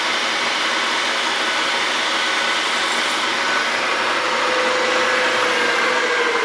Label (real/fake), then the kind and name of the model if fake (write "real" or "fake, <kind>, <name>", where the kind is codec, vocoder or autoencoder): real